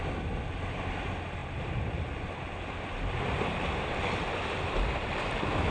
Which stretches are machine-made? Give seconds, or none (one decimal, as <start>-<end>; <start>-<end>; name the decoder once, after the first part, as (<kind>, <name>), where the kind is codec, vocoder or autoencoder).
none